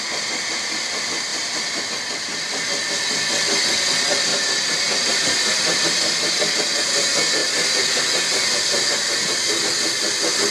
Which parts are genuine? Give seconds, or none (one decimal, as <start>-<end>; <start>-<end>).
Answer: 0.0-1.3; 1.8-4.3; 6.4-10.5